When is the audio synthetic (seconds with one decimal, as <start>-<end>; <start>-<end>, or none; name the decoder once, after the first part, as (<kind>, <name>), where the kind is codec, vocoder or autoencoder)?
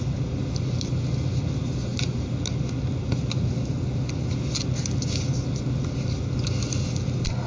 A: none